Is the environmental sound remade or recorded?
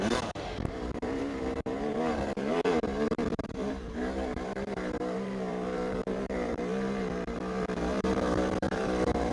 remade